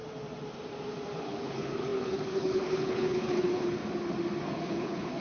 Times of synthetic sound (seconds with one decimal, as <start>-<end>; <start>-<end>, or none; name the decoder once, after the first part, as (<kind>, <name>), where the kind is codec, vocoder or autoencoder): 1.2-3.8 (codec, HILCodec); 4.4-5.2